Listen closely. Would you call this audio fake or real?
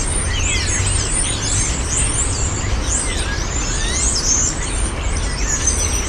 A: real